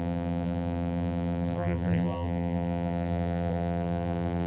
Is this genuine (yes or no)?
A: no